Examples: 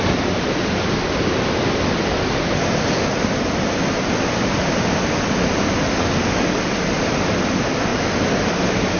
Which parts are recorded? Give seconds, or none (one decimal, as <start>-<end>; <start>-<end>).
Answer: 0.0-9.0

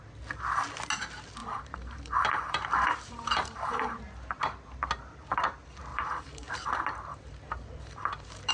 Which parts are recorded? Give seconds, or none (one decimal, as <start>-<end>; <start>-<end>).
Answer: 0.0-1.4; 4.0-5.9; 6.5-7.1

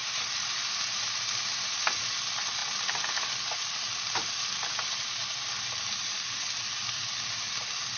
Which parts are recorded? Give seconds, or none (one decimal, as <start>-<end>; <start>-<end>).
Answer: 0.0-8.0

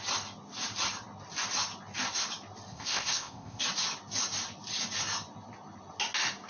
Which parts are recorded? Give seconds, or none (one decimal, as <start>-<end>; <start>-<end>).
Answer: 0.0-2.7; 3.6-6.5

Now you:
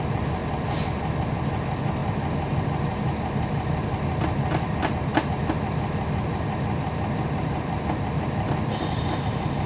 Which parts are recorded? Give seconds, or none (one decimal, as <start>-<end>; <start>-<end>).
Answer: 0.0-9.7

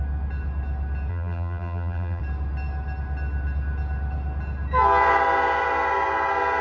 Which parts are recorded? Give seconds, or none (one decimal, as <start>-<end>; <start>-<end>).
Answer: 0.0-1.1; 2.2-6.6